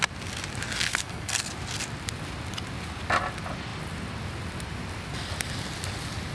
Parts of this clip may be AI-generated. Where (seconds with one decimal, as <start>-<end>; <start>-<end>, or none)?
0.9-1.5